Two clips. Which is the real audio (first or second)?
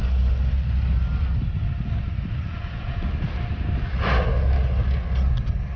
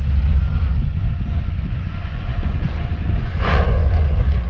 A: first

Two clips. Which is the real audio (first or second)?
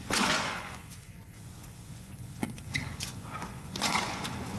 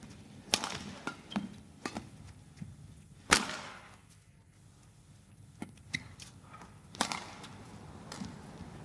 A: second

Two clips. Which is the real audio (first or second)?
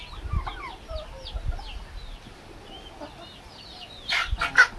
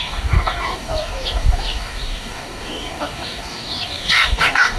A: first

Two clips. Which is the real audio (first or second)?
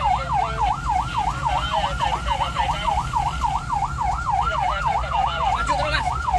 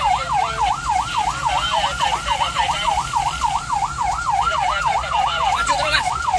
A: first